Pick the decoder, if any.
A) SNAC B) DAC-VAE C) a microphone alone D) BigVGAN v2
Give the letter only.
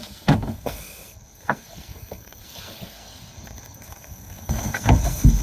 A